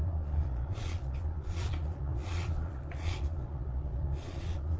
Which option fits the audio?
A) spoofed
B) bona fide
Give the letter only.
A